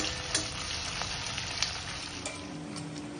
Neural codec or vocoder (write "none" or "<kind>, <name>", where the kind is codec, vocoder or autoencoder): none